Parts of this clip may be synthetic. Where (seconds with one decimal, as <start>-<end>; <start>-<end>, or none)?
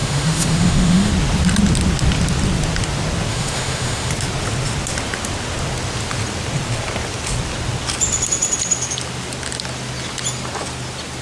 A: 0.0-1.1; 3.3-4.1